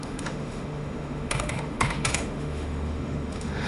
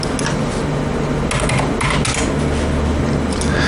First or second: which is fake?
first